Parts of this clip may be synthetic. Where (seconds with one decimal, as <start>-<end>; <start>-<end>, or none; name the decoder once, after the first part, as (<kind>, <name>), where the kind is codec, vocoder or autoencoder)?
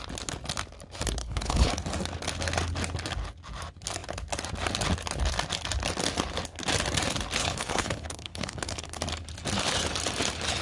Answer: 1.2-1.7 (codec, HILCodec); 7.4-9.0